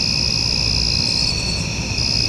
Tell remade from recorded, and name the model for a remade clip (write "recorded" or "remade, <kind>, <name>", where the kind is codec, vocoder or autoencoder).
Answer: recorded